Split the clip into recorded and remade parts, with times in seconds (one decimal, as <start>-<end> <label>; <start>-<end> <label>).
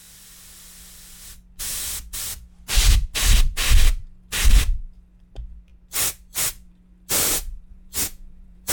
0.0-7.7 recorded; 7.7-8.7 remade